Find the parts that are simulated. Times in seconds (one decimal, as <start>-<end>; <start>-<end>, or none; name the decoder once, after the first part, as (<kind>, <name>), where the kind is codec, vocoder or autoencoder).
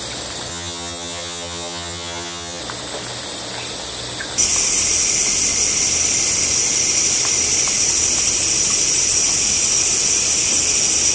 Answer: 0.5-2.6 (vocoder, HiFi-GAN)